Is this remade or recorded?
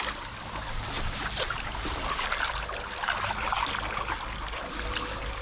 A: recorded